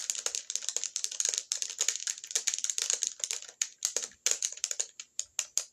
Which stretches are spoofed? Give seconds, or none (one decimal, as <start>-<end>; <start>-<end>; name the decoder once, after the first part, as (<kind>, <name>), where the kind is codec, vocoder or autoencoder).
none

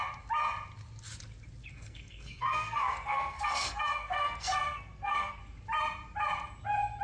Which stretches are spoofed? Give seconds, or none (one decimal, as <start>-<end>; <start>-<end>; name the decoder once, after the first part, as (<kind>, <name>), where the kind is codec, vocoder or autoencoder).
1.7-5.4 (codec, SNAC)

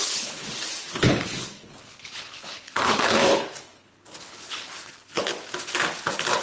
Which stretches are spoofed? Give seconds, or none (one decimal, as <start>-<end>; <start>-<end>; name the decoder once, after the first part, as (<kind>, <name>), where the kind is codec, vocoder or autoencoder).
0.0-5.3 (codec, HILCodec)